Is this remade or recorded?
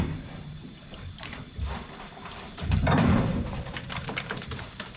remade